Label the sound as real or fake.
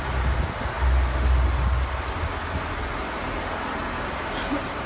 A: real